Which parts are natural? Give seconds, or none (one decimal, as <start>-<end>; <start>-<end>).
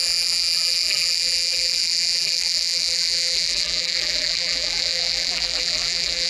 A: none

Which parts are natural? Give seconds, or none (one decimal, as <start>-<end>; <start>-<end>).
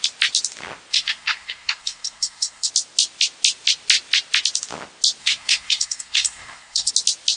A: 0.0-0.9; 2.7-5.2; 6.9-7.4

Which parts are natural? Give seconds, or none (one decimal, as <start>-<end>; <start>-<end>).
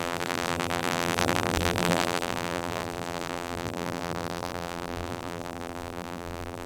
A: none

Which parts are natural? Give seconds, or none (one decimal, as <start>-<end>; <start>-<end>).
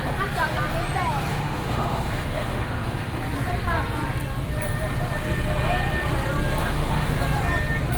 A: 0.0-1.3; 3.2-6.6; 7.2-8.0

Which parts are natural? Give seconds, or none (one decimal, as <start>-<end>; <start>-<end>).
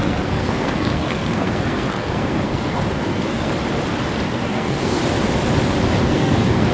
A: 3.5-4.3; 5.0-6.0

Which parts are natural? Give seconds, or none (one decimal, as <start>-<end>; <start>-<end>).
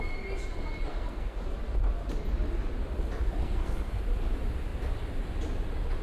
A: 0.0-0.9; 1.4-3.4; 4.0-6.0